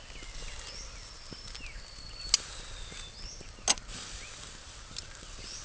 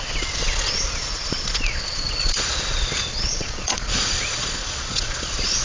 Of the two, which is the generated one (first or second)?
second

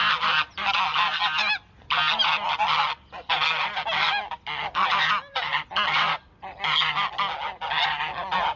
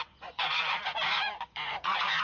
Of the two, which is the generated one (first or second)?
second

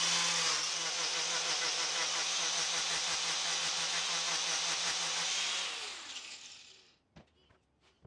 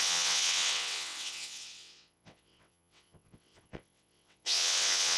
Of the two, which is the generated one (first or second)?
second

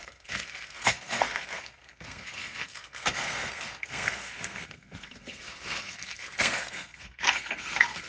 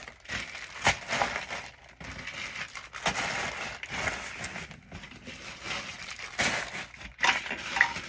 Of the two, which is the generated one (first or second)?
first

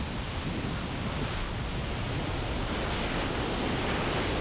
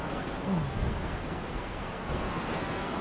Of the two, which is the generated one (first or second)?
second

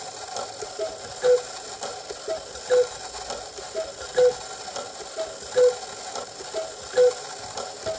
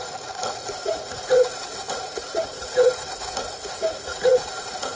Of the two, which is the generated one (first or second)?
second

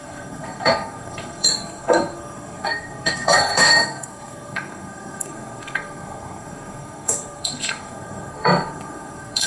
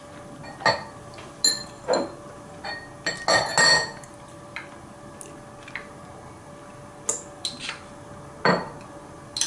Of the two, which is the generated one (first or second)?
first